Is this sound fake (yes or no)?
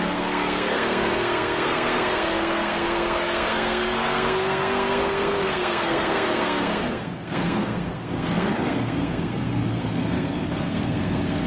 yes